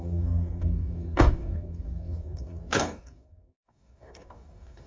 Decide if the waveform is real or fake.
fake